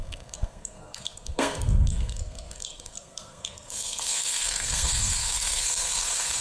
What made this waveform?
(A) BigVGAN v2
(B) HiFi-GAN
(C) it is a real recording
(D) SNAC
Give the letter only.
D